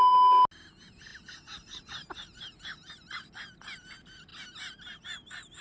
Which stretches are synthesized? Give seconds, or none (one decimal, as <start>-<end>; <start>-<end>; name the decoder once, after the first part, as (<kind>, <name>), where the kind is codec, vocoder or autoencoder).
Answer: none